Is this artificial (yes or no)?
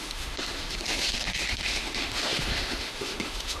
yes